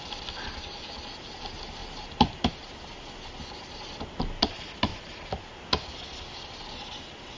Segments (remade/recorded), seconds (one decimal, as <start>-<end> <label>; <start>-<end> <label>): 0.0-1.8 recorded; 1.8-2.5 remade; 2.5-4.9 recorded; 4.9-5.6 remade; 5.6-7.4 recorded